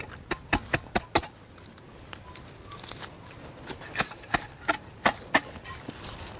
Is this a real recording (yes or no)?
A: yes